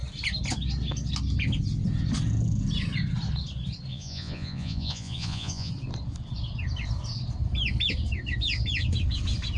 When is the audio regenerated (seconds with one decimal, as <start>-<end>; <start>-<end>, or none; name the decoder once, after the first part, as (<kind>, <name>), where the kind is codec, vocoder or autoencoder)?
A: 3.9-5.7 (vocoder, Vocos)